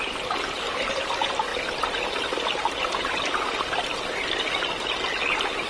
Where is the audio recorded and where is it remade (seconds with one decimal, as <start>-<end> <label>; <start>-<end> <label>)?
0.0-5.7 recorded